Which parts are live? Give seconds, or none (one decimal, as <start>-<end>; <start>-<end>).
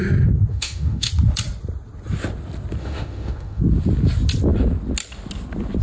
0.0-0.5; 1.1-2.8; 3.6-5.8